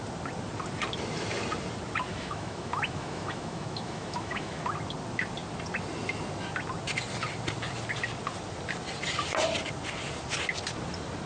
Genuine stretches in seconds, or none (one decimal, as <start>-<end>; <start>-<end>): 0.0-2.1; 4.6-11.3